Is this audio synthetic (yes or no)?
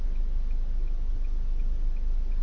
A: no